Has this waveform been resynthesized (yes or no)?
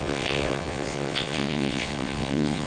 yes